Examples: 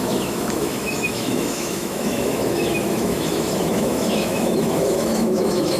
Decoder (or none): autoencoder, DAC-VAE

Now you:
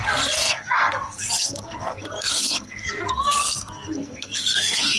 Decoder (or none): codec, SNAC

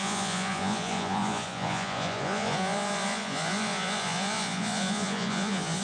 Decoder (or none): vocoder, Vocos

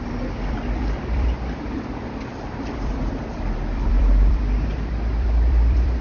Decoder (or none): vocoder, BigVGAN v2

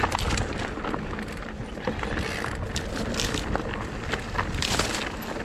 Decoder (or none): none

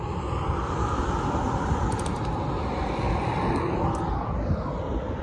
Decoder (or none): none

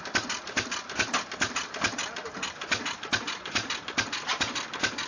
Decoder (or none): none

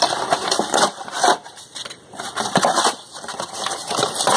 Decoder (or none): vocoder, BigVGAN v2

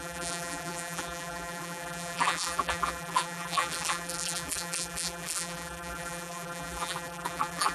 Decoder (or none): vocoder, BigVGAN v2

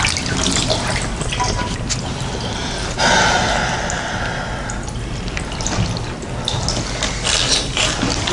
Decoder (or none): none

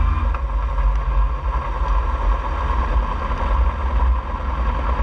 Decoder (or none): none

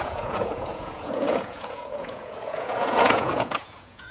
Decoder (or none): vocoder, Vocos